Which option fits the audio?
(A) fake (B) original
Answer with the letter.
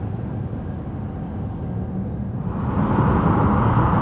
B